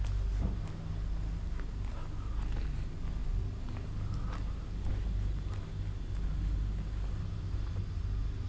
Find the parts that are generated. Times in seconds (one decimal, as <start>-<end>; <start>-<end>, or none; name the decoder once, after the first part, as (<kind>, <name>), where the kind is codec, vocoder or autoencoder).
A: 3.2-3.7 (vocoder, BigVGAN v2)